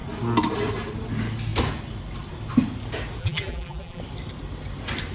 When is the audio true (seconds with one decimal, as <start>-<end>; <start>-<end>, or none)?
0.0-3.2; 4.0-5.1